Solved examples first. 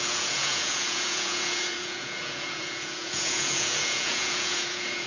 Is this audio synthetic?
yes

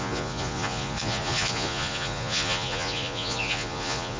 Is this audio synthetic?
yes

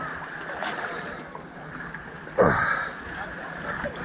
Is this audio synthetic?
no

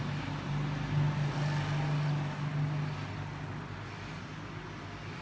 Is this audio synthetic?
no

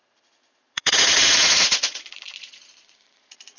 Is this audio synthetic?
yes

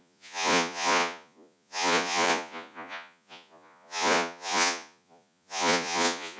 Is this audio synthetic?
yes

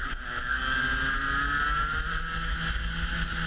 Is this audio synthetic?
no